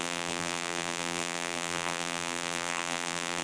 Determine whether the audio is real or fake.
fake